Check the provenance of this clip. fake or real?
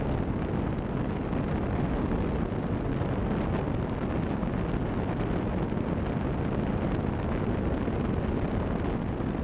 real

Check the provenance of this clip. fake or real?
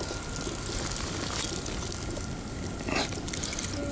real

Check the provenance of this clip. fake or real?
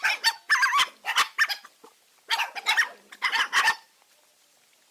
real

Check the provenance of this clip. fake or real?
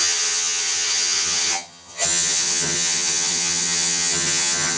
fake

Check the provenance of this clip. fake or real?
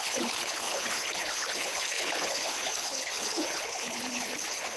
fake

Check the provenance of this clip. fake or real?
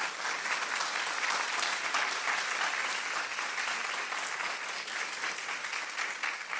real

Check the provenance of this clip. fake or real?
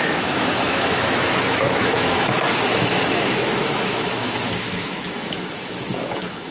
fake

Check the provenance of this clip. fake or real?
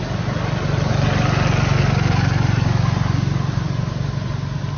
real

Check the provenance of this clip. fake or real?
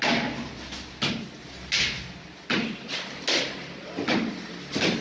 real